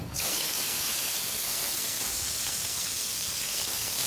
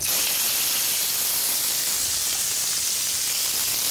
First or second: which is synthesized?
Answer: first